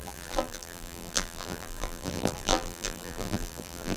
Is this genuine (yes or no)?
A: no